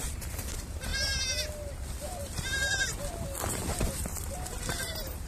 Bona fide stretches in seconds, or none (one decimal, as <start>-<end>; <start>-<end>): none